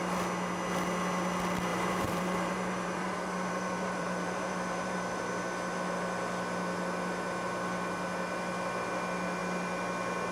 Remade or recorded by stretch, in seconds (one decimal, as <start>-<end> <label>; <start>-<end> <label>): 0.0-1.7 recorded; 1.7-5.3 remade; 5.3-10.3 recorded